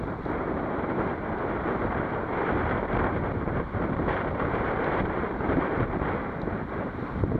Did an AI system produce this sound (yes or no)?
yes